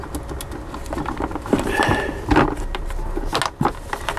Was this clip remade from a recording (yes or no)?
no